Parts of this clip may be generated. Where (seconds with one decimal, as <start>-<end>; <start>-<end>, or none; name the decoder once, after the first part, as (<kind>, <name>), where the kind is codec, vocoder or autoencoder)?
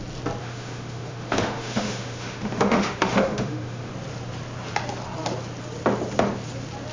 0.4-3.9 (autoencoder, DAC-VAE)